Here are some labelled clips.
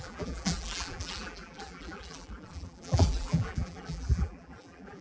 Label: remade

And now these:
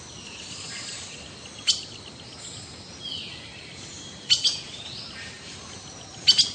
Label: recorded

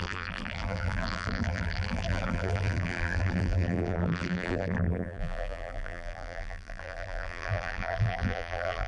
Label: remade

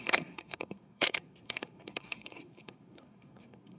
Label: remade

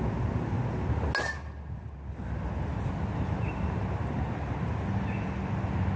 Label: recorded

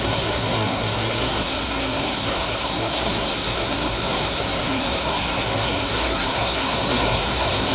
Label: remade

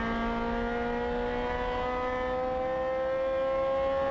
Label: recorded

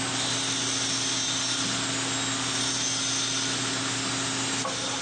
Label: recorded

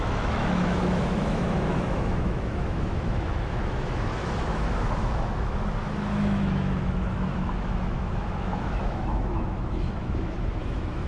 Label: remade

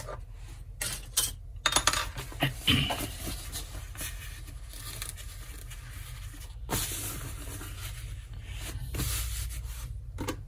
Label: recorded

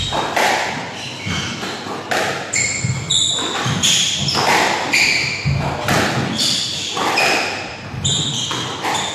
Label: recorded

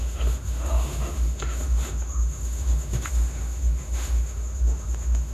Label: remade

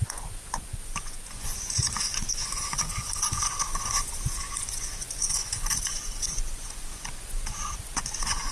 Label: remade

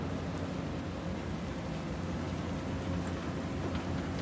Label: recorded